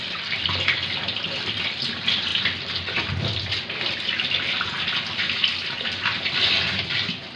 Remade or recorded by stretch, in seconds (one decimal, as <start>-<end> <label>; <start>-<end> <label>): 0.0-7.4 recorded